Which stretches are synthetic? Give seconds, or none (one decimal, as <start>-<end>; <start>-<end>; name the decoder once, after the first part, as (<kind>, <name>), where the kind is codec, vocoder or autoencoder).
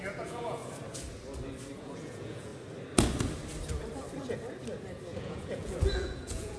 0.0-0.6 (vocoder, Vocos); 1.8-2.5; 5.2-6.6